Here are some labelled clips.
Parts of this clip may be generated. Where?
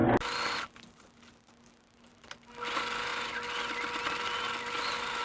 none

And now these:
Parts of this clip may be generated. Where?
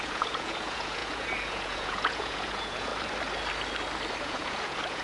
0.0-2.9; 4.2-5.0